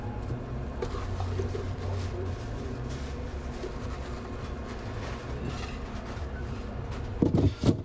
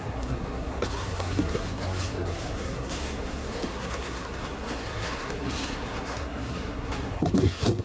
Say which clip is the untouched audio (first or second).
first